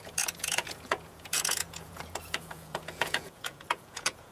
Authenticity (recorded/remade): remade